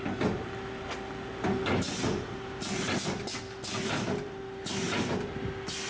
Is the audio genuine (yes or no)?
yes